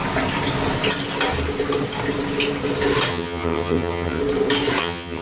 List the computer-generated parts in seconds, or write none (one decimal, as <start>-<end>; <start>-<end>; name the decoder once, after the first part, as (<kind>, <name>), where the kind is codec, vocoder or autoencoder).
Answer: 3.1-4.2 (vocoder, HiFi-GAN); 4.8-5.2